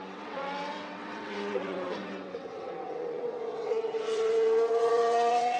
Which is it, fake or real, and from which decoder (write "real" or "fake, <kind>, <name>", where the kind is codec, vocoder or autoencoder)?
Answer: fake, vocoder, WaveNeXt